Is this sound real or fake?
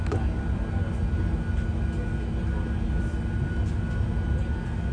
real